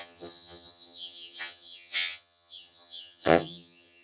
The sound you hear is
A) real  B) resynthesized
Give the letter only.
B